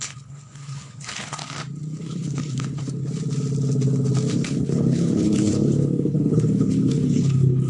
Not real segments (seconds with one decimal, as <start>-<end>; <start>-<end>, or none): 0.0-1.4; 2.0-3.0; 4.3-7.7